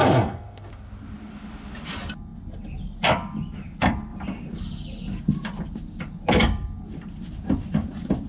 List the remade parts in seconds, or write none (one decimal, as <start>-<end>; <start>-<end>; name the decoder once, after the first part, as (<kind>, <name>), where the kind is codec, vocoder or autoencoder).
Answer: 0.0-0.7 (codec, SNAC)